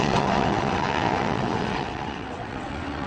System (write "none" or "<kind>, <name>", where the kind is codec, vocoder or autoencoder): vocoder, WaveNeXt